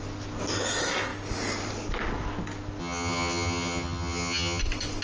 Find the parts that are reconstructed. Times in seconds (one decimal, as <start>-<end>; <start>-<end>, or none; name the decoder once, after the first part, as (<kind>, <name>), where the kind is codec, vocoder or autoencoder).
2.8-4.6 (vocoder, HiFi-GAN)

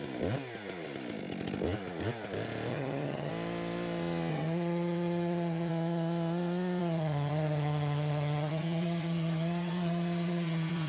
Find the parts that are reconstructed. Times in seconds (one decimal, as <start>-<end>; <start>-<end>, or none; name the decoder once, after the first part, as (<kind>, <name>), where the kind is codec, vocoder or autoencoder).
2.7-3.3 (vocoder, HiFi-GAN); 4.3-5.7; 6.8-10.9

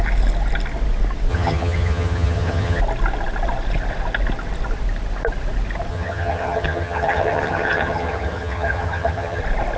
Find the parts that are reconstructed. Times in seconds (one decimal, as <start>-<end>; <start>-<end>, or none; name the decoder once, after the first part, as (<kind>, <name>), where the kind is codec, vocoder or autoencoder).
1.3-2.8 (vocoder, HiFi-GAN); 5.9-9.4

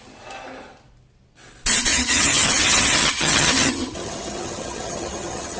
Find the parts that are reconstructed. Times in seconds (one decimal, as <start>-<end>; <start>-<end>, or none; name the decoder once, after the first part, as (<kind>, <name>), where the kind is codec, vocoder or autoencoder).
1.9-5.6 (vocoder, HiFi-GAN)

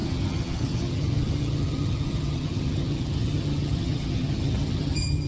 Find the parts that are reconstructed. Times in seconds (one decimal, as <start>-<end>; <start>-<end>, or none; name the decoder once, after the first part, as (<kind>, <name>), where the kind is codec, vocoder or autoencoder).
0.0-5.3 (vocoder, HiFi-GAN)

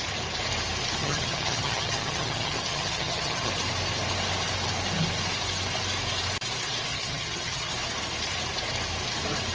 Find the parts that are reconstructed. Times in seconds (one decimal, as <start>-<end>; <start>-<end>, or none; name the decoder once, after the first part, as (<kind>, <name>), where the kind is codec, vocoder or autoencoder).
1.0-3.5 (vocoder, HiFi-GAN); 6.9-7.7

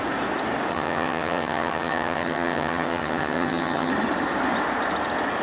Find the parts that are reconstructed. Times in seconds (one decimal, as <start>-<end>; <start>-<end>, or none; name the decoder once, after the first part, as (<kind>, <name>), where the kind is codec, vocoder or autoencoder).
0.7-3.9 (vocoder, HiFi-GAN)